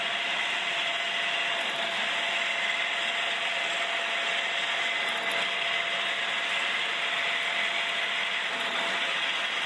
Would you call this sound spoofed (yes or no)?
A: no